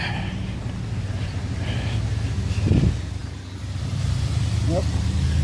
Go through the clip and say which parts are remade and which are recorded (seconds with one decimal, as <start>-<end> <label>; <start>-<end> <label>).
0.0-5.4 recorded